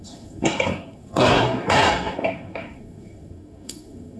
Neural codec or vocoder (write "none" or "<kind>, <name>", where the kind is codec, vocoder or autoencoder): codec, SNAC